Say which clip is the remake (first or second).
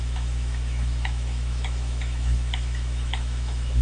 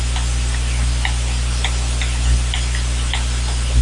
first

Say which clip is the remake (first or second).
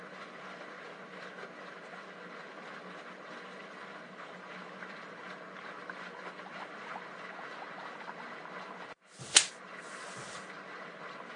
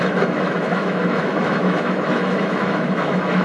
second